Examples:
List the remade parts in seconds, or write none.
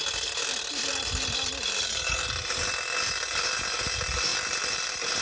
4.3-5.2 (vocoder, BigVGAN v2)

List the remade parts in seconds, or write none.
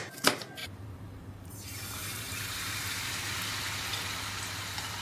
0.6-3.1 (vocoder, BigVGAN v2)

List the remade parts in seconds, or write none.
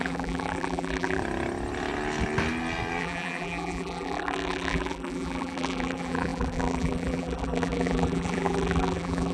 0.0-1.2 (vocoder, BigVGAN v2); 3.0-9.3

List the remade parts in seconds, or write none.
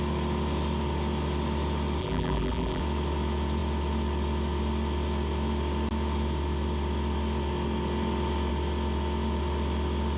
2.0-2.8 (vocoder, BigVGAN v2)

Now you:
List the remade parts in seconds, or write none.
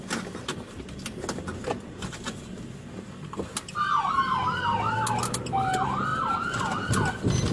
none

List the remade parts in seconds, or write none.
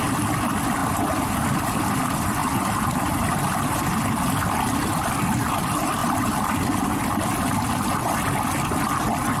0.8-2.0 (vocoder, BigVGAN v2); 6.0-6.6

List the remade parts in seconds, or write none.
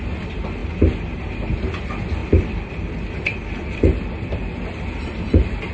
2.2-5.7 (vocoder, BigVGAN v2)